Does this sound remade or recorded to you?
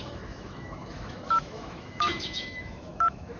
remade